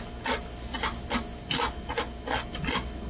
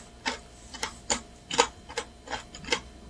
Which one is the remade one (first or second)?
second